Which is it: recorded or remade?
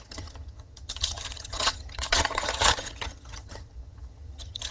remade